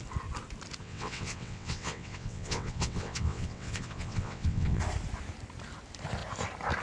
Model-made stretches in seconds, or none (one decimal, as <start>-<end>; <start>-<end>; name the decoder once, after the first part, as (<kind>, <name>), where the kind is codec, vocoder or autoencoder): 0.8-4.8 (vocoder, WaveNeXt)